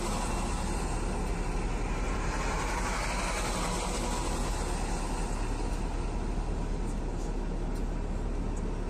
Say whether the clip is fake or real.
real